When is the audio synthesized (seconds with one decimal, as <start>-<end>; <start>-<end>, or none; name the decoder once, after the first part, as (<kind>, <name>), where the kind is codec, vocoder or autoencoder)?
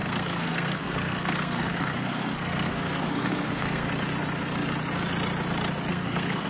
0.0-3.9 (codec, SNAC); 5.9-6.5